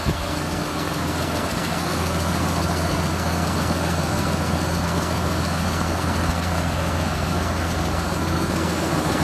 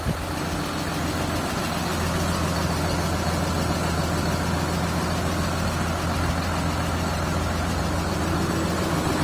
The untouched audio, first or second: second